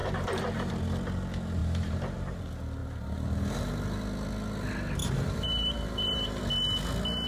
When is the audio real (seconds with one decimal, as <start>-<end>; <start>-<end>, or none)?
0.7-1.6; 2.4-2.8; 3.7-5.0; 6.4-7.3